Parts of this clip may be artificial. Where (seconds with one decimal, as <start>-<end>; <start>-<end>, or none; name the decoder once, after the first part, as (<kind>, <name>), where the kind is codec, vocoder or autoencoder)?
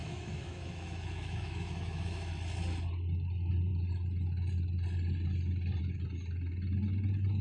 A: 0.0-2.3 (autoencoder, DAC-VAE)